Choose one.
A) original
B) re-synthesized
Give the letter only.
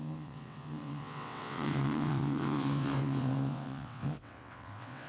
B